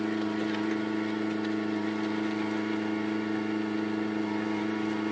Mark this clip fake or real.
real